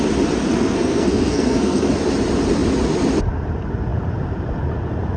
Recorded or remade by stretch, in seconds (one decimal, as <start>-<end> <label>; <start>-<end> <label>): 0.0-0.5 recorded; 0.5-1.9 remade; 1.9-5.2 recorded